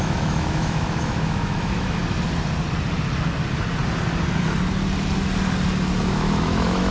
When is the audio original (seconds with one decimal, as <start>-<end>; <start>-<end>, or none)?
2.0-6.1